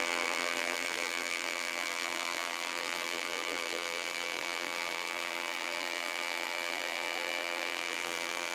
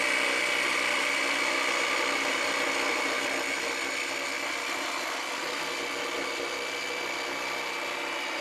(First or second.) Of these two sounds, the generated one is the first